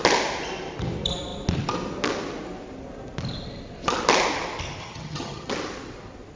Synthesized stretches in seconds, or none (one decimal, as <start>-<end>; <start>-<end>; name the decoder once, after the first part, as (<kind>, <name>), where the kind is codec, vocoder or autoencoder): 4.8-5.5 (vocoder, HiFi-GAN)